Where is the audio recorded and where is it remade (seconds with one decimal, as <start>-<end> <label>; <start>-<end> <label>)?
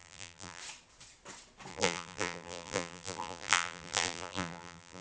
0.0-0.6 remade; 0.6-1.7 recorded; 1.7-5.0 remade